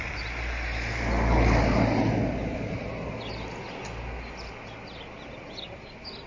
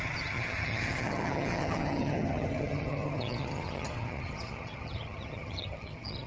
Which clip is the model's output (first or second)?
second